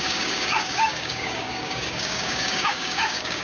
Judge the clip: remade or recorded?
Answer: remade